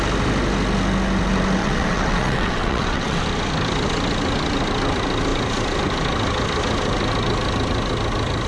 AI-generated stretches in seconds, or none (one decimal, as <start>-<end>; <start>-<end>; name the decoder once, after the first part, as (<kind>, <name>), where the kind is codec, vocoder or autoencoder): 1.6-3.2 (vocoder, WaveNeXt)